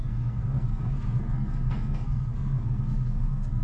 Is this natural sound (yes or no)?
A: no